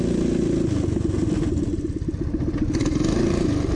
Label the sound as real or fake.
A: real